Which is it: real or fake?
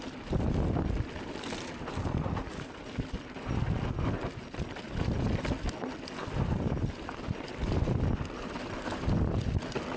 real